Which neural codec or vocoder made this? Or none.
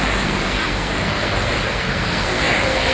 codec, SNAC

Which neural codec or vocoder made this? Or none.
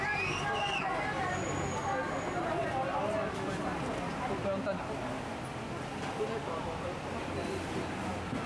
none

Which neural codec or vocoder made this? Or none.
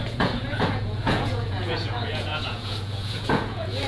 vocoder, Vocos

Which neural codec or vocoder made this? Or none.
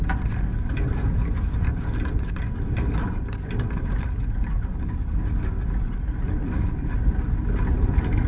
none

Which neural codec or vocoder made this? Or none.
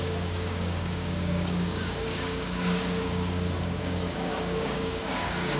codec, DAC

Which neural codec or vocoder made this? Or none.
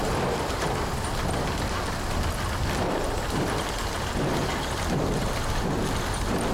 none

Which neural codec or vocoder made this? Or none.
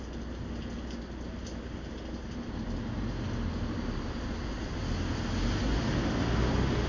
none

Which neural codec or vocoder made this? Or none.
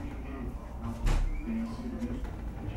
none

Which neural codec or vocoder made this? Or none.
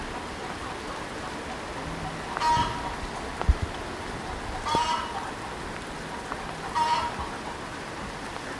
none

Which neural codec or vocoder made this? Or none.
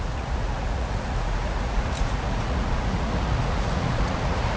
vocoder, Vocos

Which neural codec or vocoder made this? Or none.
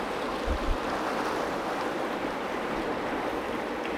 none